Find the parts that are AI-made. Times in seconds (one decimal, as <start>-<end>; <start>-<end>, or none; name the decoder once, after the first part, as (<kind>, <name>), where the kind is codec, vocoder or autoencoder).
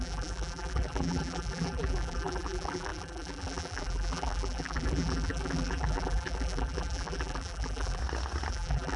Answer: 0.0-8.0 (vocoder, BigVGAN v2); 8.5-9.0